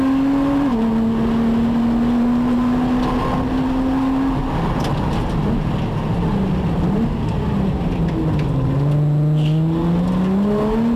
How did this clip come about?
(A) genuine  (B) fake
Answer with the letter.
A